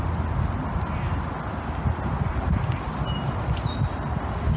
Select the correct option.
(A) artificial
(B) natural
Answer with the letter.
B